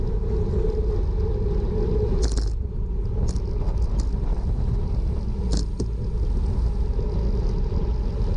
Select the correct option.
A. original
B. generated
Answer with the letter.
A